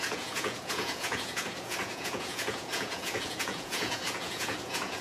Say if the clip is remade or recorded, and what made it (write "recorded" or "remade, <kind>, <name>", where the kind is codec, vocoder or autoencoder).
remade, vocoder, Vocos